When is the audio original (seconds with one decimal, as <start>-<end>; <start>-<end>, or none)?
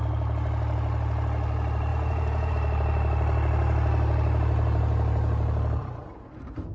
0.0-1.9; 2.5-6.7